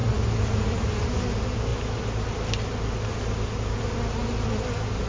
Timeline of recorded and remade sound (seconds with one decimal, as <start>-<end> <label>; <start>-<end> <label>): 0.0-5.1 recorded